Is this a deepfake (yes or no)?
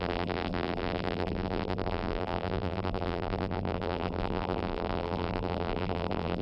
yes